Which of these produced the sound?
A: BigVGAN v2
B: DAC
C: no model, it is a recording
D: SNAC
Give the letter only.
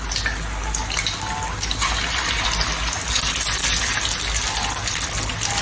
C